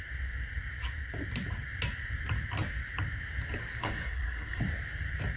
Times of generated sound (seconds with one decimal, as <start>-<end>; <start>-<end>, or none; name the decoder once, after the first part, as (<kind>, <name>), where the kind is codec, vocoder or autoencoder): 3.8-4.6 (codec, SNAC)